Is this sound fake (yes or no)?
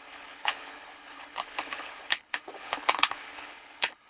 yes